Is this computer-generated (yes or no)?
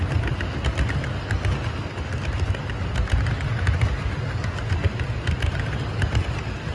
no